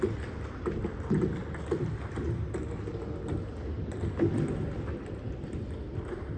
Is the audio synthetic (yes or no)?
no